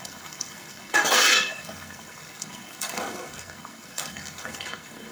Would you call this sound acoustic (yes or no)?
no